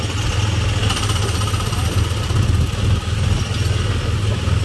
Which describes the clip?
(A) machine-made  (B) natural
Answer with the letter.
B